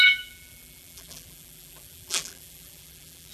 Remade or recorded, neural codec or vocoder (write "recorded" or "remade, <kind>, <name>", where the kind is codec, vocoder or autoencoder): remade, vocoder, BigVGAN v2